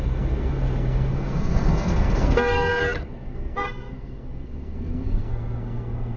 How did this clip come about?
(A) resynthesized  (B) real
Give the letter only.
A